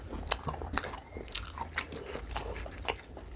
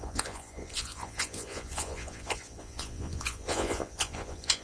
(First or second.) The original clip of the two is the first